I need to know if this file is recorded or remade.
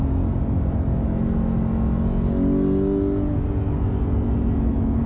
recorded